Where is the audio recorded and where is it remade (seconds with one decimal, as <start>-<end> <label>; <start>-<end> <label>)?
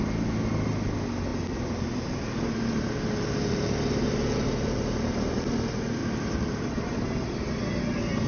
0.0-6.0 recorded; 6.0-6.8 remade; 6.8-8.3 recorded